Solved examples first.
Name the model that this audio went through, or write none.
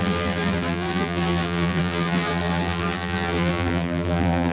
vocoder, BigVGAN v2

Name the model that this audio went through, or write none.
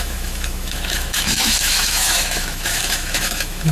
autoencoder, DAC-VAE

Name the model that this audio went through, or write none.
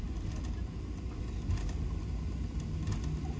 none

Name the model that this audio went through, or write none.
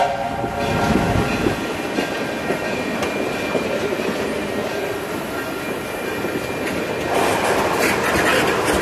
none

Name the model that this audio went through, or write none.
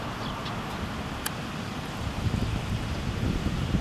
none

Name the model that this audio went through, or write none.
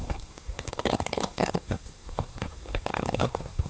codec, SNAC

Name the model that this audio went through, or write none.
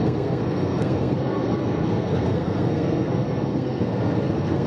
codec, SNAC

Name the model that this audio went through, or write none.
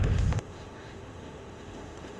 autoencoder, DAC-VAE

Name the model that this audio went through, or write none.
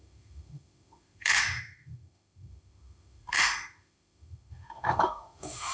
autoencoder, DAC-VAE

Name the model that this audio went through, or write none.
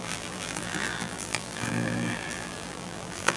vocoder, BigVGAN v2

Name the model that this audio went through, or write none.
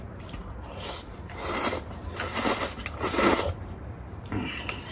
vocoder, BigVGAN v2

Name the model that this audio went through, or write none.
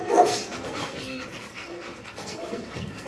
codec, SNAC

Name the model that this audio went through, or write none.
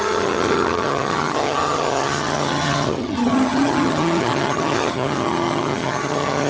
vocoder, HiFi-GAN